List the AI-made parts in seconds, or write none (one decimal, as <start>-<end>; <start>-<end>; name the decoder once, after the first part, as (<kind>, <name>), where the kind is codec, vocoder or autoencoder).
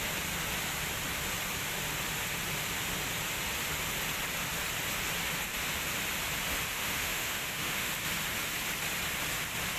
6.7-7.9 (autoencoder, DAC-VAE)